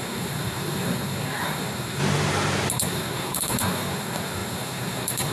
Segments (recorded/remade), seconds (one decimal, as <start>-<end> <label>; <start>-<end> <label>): 0.0-2.0 remade; 2.0-2.7 recorded; 2.7-5.3 remade

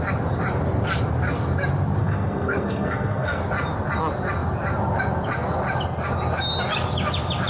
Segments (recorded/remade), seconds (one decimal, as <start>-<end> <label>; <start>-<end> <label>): 0.0-2.0 recorded; 2.0-3.4 remade; 3.4-7.5 recorded

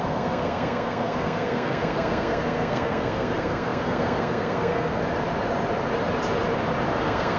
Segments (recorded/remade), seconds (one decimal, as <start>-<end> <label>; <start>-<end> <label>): 0.0-5.0 remade; 5.0-7.0 recorded; 7.0-7.4 remade

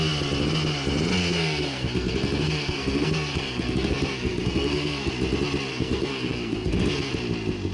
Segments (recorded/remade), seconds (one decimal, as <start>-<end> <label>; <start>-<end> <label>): 0.0-1.2 recorded; 1.2-5.1 remade; 5.1-5.7 recorded; 5.7-7.1 remade; 7.1-7.7 recorded